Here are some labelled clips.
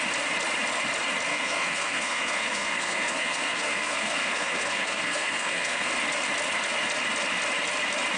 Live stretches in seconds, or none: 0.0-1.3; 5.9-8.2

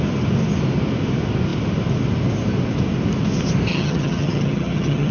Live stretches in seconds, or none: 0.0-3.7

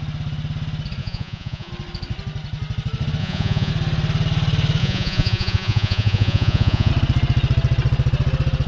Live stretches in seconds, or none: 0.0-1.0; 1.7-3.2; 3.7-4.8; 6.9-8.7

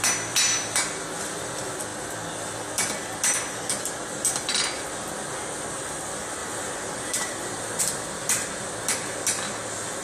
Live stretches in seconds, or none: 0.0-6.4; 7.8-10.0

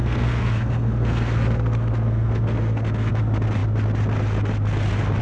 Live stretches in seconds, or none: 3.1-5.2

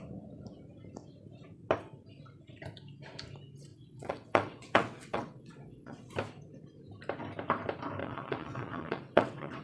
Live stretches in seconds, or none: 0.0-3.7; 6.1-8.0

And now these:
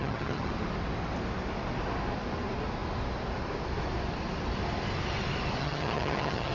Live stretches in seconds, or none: 0.5-5.6